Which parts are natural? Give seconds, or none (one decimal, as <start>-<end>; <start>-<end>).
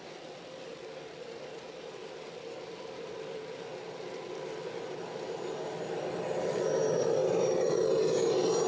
0.0-7.2; 7.9-8.7